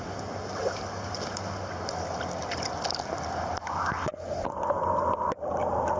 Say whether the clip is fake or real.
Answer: real